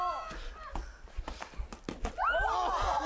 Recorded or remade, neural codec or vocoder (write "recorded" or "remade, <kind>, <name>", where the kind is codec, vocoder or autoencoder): recorded